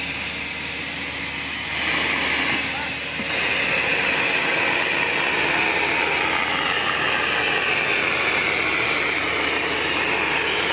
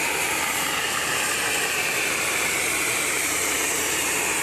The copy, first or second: second